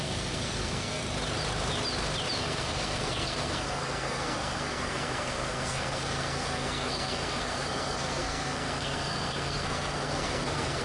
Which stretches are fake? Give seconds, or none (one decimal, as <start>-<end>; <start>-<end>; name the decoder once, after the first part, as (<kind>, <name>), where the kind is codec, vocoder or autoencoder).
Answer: 0.0-1.0 (codec, SNAC); 2.4-10.8